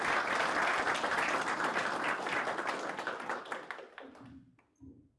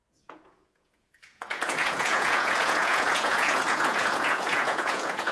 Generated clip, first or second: second